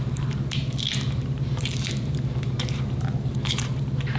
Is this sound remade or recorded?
remade